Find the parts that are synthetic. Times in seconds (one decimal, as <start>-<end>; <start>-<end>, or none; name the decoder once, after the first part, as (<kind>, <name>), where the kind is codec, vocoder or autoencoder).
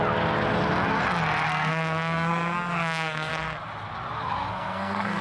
1.5-3.4 (codec, SNAC); 4.5-5.2